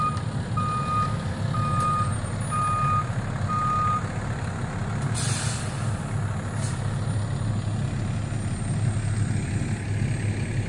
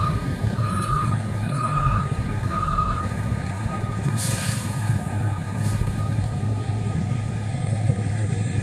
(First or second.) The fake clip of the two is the second